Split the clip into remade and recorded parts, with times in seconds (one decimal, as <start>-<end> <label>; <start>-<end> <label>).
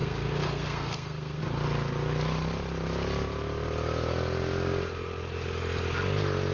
0.0-1.4 remade; 1.4-6.5 recorded